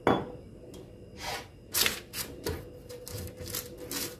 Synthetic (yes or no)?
no